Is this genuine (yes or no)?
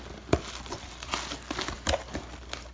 yes